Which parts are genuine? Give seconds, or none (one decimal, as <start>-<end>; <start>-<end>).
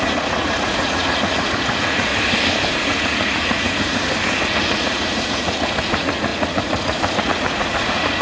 2.1-2.7